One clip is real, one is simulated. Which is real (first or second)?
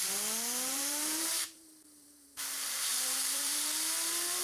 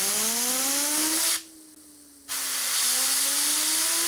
second